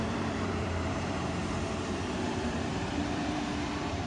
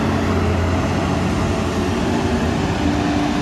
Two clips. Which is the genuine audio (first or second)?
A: second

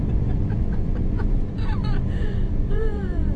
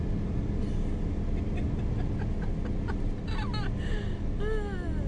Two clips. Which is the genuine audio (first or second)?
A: second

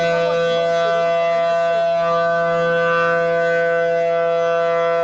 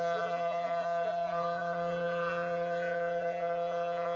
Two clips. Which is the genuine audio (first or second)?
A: first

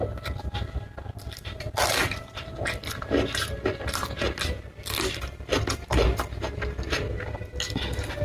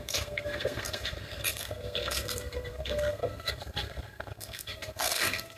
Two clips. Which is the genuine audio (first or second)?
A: first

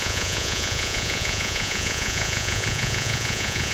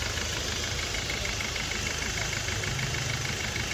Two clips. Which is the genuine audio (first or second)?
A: second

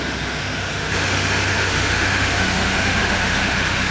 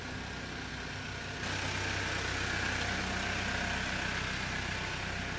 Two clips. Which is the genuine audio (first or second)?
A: second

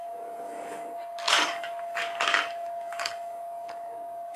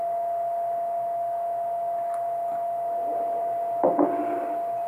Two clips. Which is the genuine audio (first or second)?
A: second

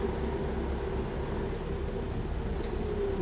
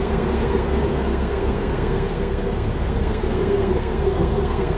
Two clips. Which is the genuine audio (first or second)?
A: first